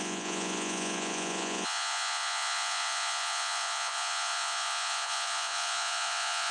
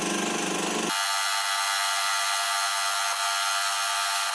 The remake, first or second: first